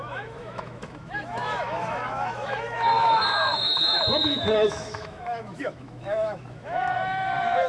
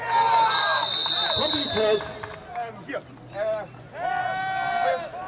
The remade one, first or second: first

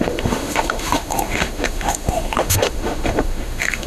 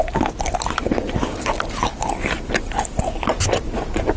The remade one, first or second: first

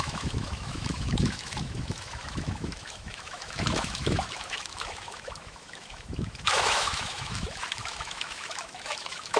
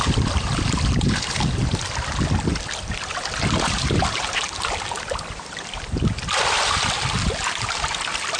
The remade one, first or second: first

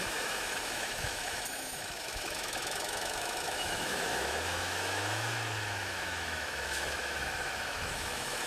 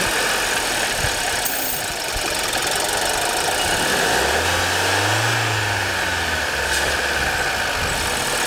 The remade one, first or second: first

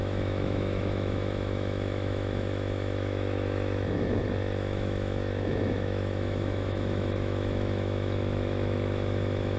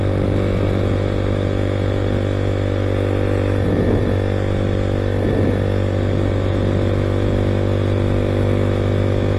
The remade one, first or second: first